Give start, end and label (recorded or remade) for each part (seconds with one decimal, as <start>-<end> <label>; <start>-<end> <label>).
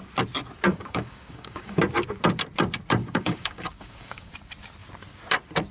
0.0-0.7 recorded; 0.7-1.8 remade; 1.8-3.0 recorded; 3.0-4.3 remade; 4.3-5.7 recorded